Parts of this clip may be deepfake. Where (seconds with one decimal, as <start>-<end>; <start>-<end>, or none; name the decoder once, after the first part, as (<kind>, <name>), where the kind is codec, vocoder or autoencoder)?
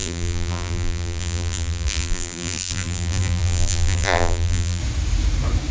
0.0-4.8 (vocoder, BigVGAN v2)